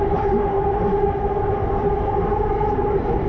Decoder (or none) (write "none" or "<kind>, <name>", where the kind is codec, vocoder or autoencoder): vocoder, BigVGAN v2